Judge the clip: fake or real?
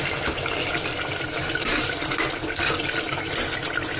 real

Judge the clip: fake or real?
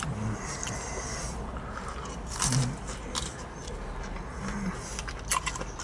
real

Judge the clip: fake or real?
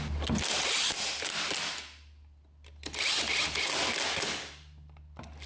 real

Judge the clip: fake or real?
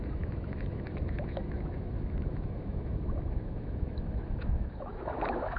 fake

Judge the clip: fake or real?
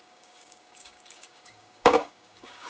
fake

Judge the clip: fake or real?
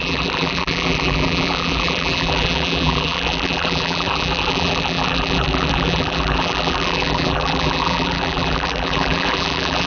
fake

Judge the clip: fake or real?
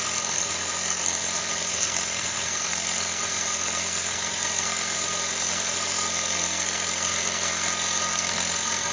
fake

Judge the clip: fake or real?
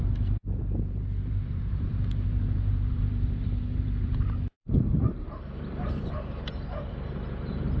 fake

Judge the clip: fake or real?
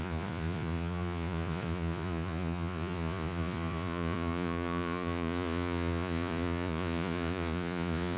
fake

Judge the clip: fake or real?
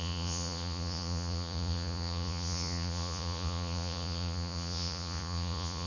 fake